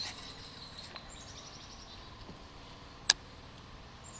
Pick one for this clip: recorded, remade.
recorded